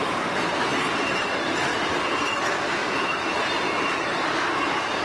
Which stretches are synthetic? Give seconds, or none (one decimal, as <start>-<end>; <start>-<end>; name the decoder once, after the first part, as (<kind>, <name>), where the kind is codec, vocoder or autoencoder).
2.8-3.4 (autoencoder, DAC-VAE)